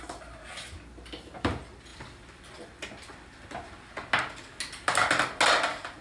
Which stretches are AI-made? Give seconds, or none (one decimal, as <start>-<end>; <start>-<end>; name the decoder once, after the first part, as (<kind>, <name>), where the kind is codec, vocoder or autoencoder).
none